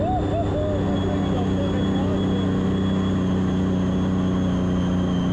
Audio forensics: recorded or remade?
recorded